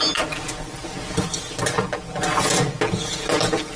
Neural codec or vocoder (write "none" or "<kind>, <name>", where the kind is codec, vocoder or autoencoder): none